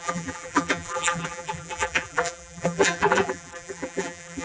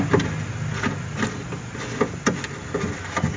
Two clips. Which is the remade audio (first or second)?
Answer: first